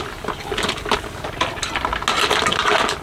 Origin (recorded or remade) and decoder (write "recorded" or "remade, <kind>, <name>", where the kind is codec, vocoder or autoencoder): recorded